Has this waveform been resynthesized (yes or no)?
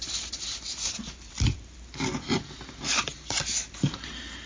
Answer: no